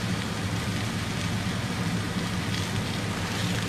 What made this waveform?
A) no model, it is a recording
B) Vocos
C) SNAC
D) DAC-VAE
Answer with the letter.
A